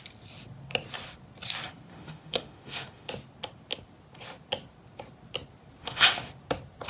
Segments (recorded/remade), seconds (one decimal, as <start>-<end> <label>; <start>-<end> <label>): 0.0-1.9 recorded; 1.9-3.1 remade; 3.1-5.8 recorded; 5.8-6.3 remade; 6.3-6.9 recorded